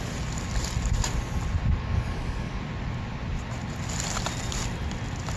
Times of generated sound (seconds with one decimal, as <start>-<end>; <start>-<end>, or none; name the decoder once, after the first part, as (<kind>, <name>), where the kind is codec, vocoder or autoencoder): 1.8-2.6 (codec, DAC)